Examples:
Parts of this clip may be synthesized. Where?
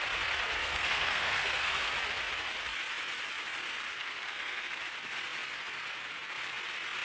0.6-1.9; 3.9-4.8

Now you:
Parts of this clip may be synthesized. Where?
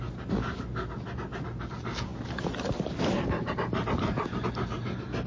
none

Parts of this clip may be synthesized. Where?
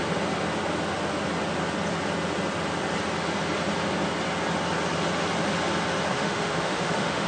6.1-7.3